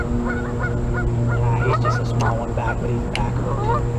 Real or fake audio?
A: real